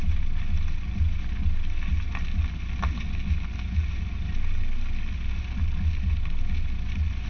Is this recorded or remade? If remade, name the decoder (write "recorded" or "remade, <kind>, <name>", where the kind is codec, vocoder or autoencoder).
recorded